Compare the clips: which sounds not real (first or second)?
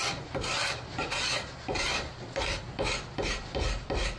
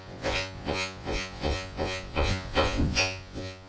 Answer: second